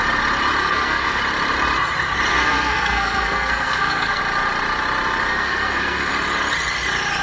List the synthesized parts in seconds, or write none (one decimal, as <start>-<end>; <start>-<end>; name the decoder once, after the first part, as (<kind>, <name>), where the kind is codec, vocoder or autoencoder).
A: 0.6-1.2 (codec, SNAC); 2.3-4.2; 5.3-6.1